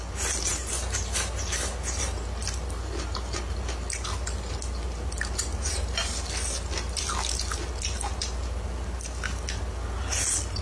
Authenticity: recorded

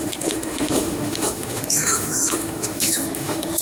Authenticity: remade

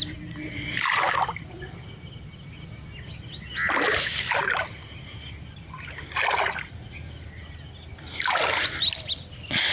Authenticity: recorded